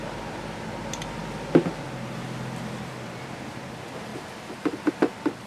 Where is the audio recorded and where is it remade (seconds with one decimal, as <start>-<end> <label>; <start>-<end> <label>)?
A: 0.0-5.5 recorded